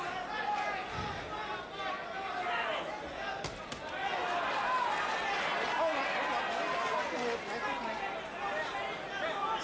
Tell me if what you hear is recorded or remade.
recorded